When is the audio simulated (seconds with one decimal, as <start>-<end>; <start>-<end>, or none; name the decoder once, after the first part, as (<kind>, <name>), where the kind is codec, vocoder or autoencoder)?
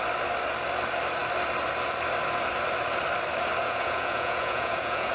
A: 3.6-5.1 (vocoder, Vocos)